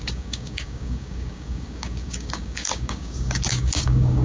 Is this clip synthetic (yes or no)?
yes